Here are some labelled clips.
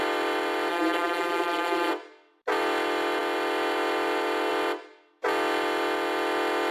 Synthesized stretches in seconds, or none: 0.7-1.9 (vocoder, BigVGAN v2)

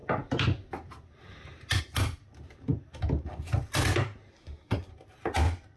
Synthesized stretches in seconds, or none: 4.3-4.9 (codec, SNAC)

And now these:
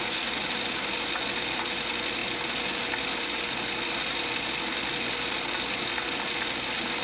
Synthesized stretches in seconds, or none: none

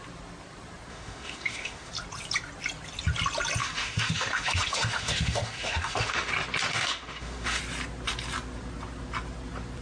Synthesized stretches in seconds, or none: 0.9-1.9 (autoencoder, DAC-VAE); 3.6-6.3; 6.7-7.6

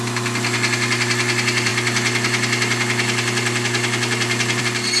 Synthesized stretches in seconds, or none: none